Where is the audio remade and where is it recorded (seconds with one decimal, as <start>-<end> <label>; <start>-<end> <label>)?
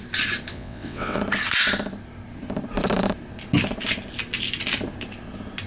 0.0-0.5 recorded; 0.5-1.2 remade; 1.2-5.7 recorded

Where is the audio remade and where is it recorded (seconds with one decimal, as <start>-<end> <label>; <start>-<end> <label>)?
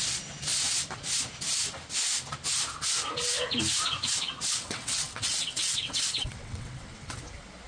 0.0-4.6 recorded; 4.6-7.2 remade; 7.2-7.7 recorded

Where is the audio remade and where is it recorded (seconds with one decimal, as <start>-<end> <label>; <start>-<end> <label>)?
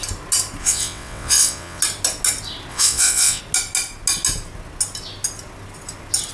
0.0-0.6 recorded; 0.6-1.8 remade; 1.8-2.7 recorded; 2.7-3.4 remade; 3.4-6.3 recorded